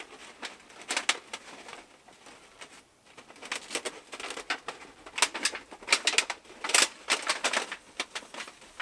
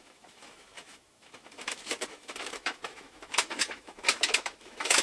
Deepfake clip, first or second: second